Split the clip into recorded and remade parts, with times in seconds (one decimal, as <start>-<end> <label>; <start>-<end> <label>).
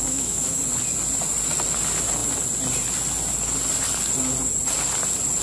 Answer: 0.0-0.6 remade; 0.6-5.4 recorded